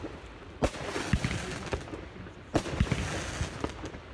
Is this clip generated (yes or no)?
no